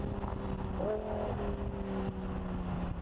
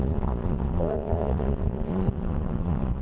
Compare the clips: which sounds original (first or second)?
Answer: first